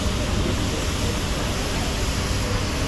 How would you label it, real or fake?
real